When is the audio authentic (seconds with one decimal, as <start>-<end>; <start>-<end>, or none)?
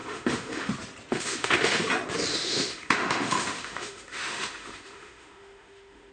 0.7-1.1; 1.8-2.3